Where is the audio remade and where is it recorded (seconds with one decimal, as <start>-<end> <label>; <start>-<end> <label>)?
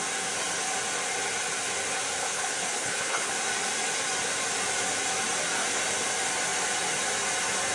0.0-2.2 recorded; 2.2-3.3 remade; 3.3-7.7 recorded